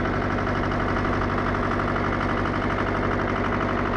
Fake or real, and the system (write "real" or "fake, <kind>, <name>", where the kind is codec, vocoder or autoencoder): real